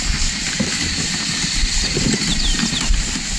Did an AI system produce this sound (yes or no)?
yes